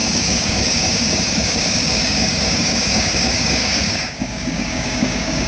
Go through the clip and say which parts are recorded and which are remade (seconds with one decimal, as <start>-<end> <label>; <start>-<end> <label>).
0.0-5.5 remade